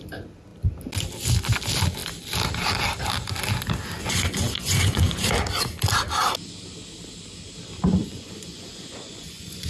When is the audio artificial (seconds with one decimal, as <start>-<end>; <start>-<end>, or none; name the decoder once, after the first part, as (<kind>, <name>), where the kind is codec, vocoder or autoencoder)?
4.0-5.3 (vocoder, Vocos); 8.0-9.7